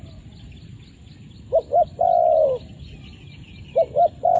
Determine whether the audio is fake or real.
real